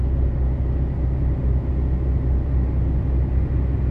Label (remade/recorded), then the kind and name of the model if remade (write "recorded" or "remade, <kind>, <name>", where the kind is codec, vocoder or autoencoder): recorded